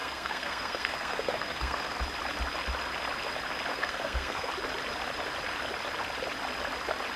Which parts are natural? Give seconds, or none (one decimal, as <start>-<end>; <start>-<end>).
2.0-3.7; 4.5-7.2